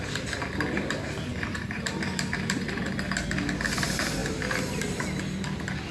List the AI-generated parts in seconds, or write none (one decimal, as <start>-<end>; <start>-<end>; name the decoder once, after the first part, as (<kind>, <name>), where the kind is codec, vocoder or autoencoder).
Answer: 1.3-2.8 (vocoder, BigVGAN v2); 4.2-5.0